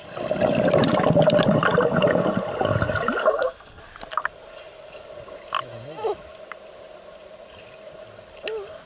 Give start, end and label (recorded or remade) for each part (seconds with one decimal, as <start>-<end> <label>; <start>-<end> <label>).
0.0-3.2 recorded; 3.2-3.8 remade; 3.8-8.9 recorded